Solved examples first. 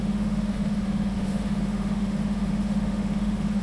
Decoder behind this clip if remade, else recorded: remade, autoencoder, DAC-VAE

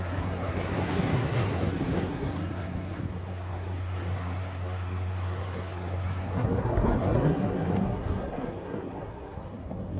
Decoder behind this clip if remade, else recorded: remade, codec, SNAC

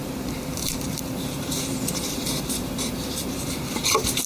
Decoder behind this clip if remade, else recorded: remade, vocoder, BigVGAN v2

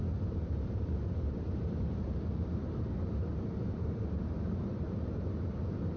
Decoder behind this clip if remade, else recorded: remade, vocoder, BigVGAN v2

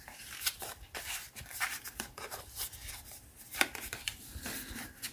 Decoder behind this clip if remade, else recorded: remade, vocoder, BigVGAN v2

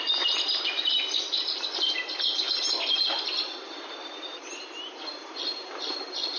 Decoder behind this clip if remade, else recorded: recorded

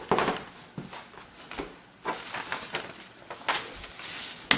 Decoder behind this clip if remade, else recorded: recorded